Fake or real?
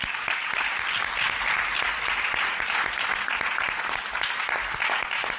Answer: real